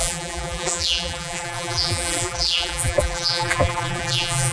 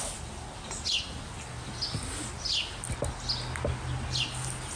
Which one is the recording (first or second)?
second